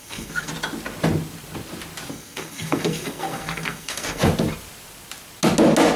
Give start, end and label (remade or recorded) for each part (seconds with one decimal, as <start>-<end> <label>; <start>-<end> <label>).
0.0-0.5 remade; 0.5-2.1 recorded; 2.1-4.2 remade; 4.2-6.0 recorded